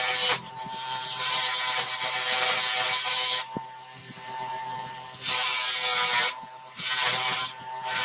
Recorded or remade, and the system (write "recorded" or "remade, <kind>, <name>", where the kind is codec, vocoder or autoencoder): remade, vocoder, BigVGAN v2